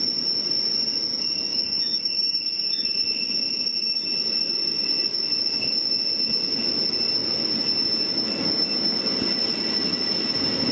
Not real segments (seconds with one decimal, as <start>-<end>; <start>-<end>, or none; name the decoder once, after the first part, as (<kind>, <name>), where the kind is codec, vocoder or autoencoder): 1.5-2.9 (codec, DAC)